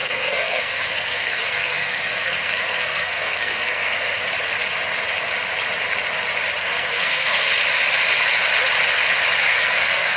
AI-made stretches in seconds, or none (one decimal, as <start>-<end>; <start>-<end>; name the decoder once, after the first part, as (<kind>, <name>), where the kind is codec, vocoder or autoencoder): 0.0-4.2 (codec, SNAC); 6.6-7.5; 9.4-10.2